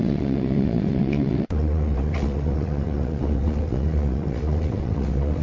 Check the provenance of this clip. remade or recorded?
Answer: remade